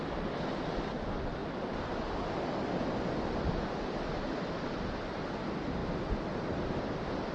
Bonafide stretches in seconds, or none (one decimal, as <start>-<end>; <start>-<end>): 0.0-7.3